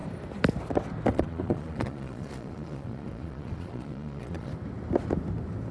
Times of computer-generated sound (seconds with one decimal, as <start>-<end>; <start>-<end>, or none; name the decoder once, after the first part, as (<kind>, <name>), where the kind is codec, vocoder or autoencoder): 1.1-4.5 (vocoder, Vocos)